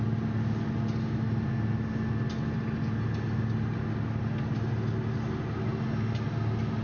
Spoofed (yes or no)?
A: no